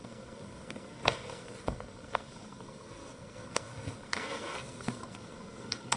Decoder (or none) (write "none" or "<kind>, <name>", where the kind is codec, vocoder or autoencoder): codec, SNAC